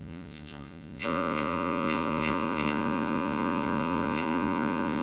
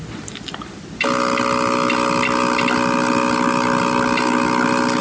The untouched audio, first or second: second